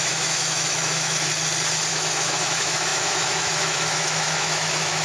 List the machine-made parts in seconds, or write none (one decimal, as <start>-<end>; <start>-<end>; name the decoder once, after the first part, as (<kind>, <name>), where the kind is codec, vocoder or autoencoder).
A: 0.0-1.3 (autoencoder, DAC-VAE); 1.9-5.0